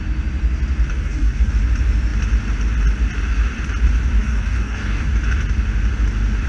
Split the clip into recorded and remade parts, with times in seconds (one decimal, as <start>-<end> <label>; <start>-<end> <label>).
0.0-0.9 recorded; 0.9-1.5 remade; 1.5-4.2 recorded; 4.2-5.1 remade; 5.1-6.5 recorded